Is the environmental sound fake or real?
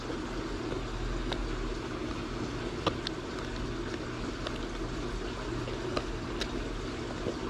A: real